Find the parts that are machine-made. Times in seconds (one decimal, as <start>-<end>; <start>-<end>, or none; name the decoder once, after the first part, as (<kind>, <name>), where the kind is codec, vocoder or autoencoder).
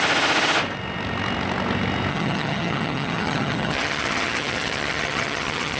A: 2.1-5.8 (vocoder, HiFi-GAN)